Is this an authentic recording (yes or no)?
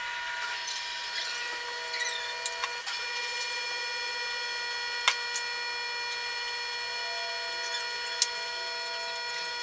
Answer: yes